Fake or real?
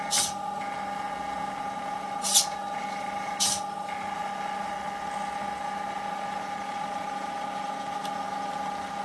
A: real